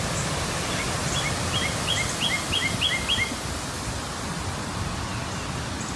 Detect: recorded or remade recorded